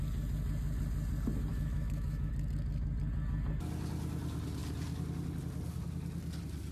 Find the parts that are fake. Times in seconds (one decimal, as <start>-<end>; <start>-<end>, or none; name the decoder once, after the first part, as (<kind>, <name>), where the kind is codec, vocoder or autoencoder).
1.5-2.3 (autoencoder, DAC-VAE)